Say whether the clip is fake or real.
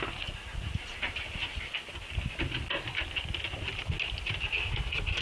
real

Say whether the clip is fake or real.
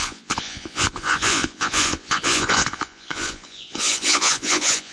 fake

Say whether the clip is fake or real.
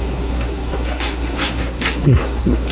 fake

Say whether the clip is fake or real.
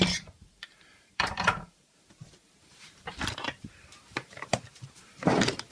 fake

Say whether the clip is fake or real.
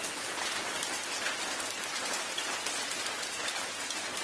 real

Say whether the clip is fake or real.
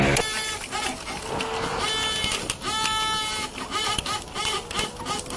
real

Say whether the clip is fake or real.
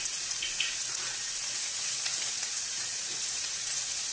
fake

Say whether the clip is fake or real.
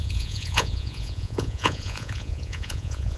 fake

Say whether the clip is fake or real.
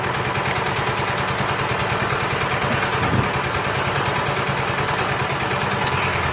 real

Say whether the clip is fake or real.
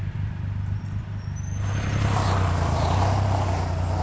real